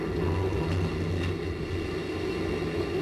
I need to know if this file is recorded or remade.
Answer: recorded